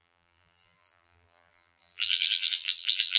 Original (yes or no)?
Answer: no